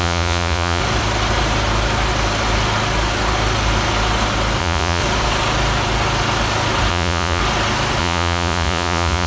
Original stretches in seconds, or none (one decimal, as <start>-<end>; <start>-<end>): 0.8-4.6; 5.0-6.9; 7.4-8.0